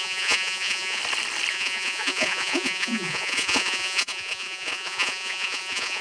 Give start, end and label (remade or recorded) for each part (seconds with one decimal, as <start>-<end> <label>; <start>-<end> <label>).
0.0-1.0 remade; 1.0-1.5 recorded; 1.5-6.0 remade